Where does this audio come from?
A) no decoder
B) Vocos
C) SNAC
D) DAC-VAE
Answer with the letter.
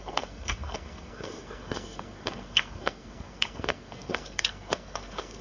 C